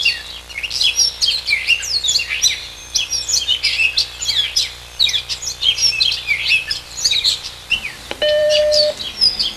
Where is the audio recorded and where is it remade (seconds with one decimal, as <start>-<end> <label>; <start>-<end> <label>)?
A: 0.0-2.6 recorded; 2.6-3.1 remade; 3.1-6.6 recorded; 6.6-8.6 remade; 8.6-9.6 recorded